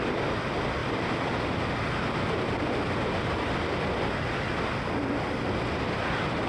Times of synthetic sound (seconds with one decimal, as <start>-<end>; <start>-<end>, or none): none